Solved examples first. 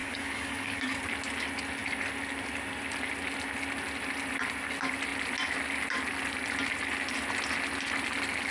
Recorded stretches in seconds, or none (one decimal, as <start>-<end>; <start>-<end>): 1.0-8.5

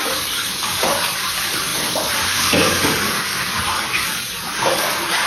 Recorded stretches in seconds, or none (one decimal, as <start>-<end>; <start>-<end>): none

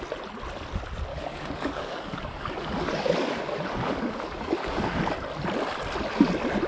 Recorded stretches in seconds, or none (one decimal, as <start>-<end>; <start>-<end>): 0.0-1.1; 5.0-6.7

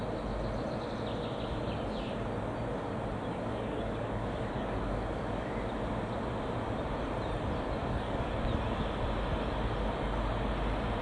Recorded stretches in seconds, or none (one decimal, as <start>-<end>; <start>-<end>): 0.0-3.3; 5.5-7.8; 8.3-11.0